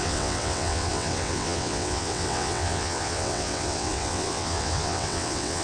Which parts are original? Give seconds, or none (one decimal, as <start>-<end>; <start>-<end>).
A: none